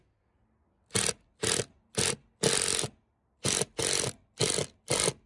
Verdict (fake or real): real